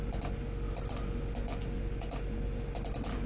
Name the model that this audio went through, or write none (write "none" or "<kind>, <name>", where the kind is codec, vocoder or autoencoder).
none